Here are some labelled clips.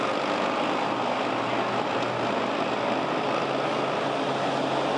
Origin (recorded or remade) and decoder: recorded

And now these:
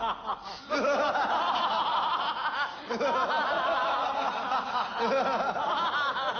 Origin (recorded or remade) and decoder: recorded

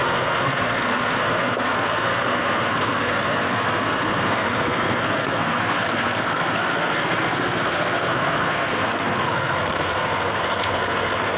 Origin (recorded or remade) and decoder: remade, codec, SNAC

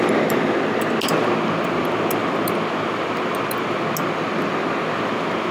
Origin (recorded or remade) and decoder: recorded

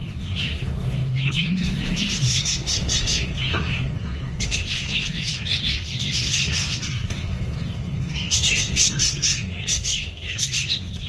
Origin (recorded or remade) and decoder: remade, codec, SNAC